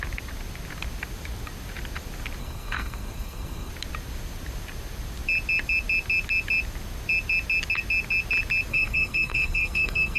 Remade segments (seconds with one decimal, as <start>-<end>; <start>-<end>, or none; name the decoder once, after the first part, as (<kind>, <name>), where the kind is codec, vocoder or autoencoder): 2.4-3.7 (codec, SNAC); 8.7-10.2